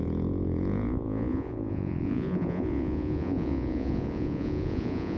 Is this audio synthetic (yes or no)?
yes